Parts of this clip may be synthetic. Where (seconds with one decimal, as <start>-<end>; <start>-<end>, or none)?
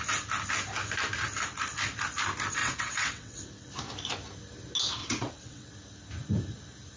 2.6-3.4; 5.0-5.7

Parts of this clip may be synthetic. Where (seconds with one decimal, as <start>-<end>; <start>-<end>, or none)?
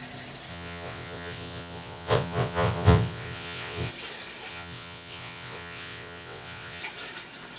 0.5-3.9; 4.5-6.8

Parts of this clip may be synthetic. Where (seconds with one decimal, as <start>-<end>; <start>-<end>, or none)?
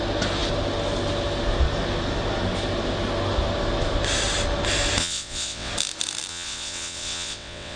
5.0-5.7; 6.3-7.8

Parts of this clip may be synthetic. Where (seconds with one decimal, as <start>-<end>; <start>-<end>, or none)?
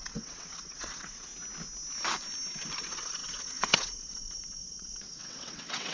0.0-1.3; 2.8-5.9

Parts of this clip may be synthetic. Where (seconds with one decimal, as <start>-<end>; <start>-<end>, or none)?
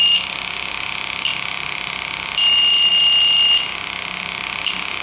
none